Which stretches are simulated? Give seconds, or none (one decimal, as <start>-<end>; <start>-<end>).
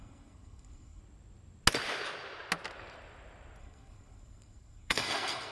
0.0-1.0; 3.6-5.5